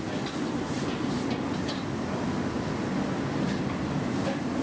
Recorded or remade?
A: recorded